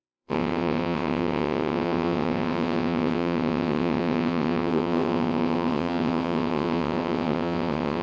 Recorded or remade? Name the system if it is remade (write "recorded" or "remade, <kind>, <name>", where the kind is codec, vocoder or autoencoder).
remade, vocoder, WaveNeXt